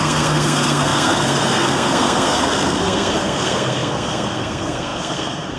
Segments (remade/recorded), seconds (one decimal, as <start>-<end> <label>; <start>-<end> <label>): 0.0-5.6 remade